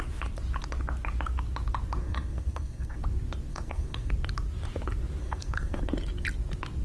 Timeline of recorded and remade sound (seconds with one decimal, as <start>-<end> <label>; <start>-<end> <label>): 0.0-2.0 recorded; 2.0-3.0 remade; 3.0-3.5 recorded; 3.5-4.1 remade; 4.1-5.2 recorded; 5.2-5.8 remade; 5.8-6.8 recorded